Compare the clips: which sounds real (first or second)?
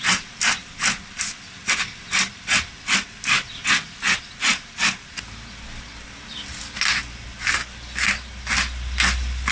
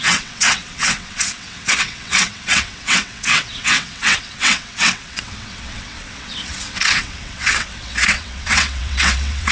first